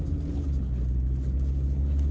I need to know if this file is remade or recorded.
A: recorded